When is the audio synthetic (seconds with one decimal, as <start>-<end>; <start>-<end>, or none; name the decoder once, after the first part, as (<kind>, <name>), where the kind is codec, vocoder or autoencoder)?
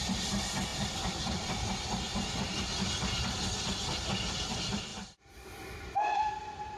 0.7-1.5 (vocoder, BigVGAN v2); 2.1-2.6; 4.9-6.3